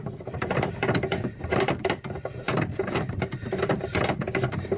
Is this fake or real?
fake